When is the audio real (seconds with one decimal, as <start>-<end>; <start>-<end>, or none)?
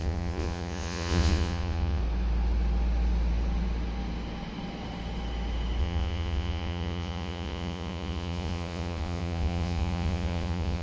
2.0-5.8